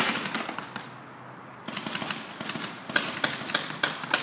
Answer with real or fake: real